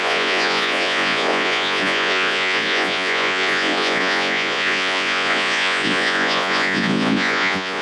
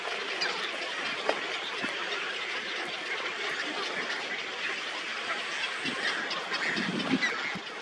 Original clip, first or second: second